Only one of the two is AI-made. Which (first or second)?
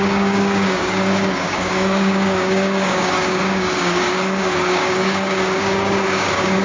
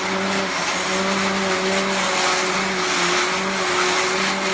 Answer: first